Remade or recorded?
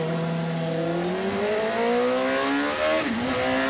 recorded